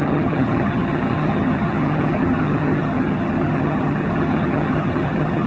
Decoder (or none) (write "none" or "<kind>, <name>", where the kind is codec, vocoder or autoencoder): vocoder, HiFi-GAN